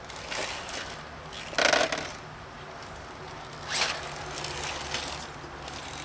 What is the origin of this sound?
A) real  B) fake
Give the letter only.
A